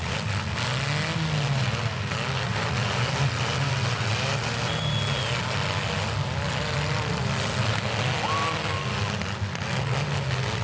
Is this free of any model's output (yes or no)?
yes